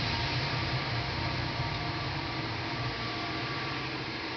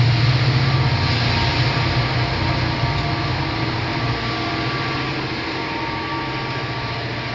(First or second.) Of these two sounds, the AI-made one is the first